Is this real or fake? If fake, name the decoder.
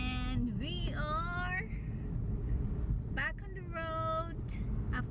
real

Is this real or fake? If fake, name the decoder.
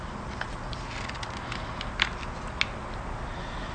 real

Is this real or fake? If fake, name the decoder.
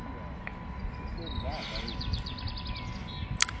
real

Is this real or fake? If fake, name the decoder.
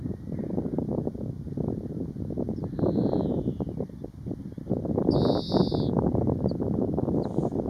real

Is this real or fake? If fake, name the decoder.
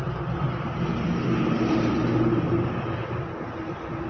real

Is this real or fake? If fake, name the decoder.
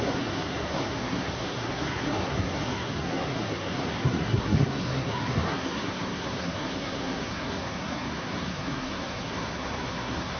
fake, codec, SNAC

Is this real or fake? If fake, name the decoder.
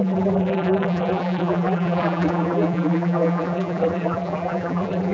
fake, vocoder, BigVGAN v2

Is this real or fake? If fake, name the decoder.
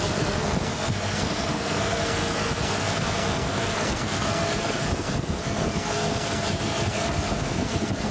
fake, codec, SNAC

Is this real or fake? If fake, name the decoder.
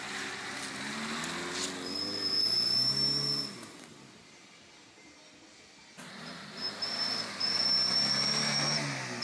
real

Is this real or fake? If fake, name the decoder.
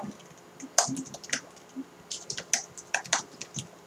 real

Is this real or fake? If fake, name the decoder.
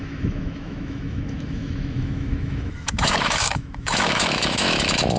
fake, autoencoder, DAC-VAE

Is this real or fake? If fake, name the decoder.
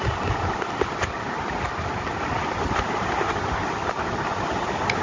real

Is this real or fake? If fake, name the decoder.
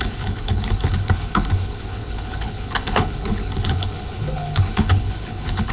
fake, codec, HILCodec